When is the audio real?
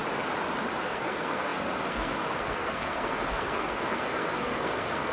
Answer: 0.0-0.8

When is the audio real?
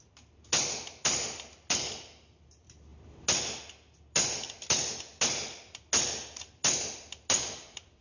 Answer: 0.0-8.0